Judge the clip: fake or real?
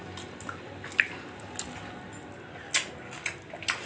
real